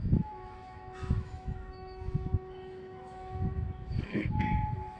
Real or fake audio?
fake